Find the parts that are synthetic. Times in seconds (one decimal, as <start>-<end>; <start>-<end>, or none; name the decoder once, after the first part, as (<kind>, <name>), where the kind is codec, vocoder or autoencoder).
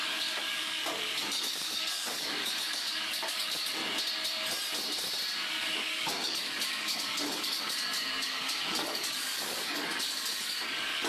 0.0-3.8 (codec, DAC); 5.5-11.1